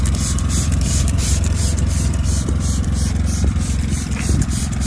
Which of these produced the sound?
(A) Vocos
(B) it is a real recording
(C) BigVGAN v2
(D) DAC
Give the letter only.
C